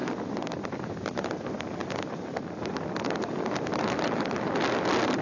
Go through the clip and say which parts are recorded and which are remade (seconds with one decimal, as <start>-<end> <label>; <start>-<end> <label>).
0.0-0.7 recorded; 0.7-1.8 remade; 1.8-4.8 recorded; 4.8-5.2 remade